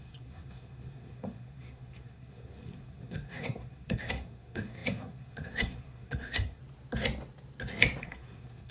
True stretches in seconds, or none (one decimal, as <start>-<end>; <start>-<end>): 6.6-8.0